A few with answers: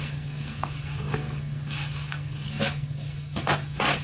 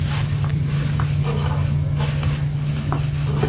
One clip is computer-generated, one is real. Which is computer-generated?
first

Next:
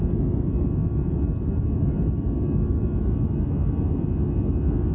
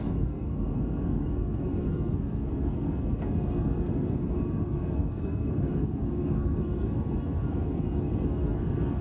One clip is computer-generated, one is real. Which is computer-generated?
second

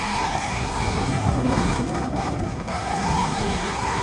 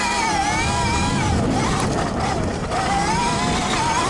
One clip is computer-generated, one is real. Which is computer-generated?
first